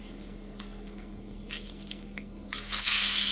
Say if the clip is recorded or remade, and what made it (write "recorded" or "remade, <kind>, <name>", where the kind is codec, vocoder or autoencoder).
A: remade, codec, SNAC